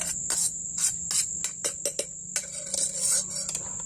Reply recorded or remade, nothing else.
recorded